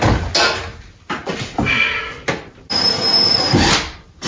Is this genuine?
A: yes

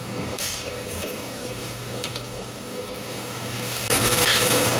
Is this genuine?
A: no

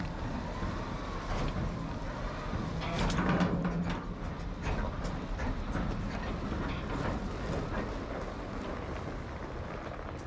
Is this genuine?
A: yes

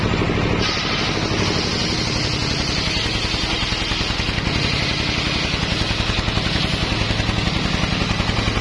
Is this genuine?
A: yes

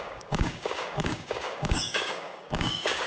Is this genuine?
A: no